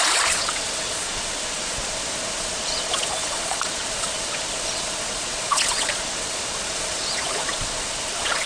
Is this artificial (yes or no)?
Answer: yes